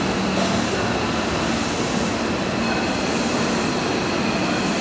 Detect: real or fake real